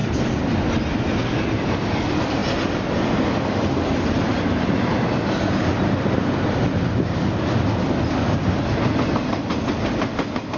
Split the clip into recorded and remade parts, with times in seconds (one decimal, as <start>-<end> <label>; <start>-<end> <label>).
0.0-0.7 remade; 0.7-10.6 recorded